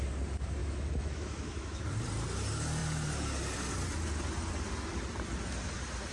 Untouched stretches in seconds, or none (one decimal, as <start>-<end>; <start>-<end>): 0.0-0.6; 1.8-6.1